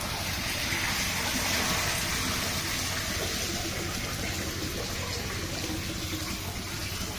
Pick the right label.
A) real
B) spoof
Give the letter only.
A